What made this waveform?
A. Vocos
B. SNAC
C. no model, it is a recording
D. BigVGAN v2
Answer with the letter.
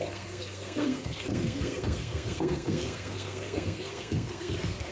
B